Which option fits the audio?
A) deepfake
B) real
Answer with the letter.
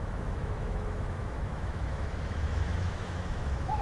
A